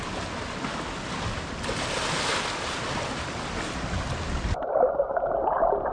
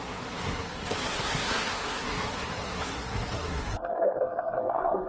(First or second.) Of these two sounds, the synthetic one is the second